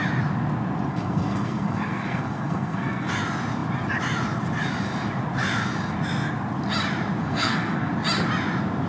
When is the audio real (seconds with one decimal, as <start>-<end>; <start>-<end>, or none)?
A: 0.0-0.9; 3.1-7.2; 7.9-8.9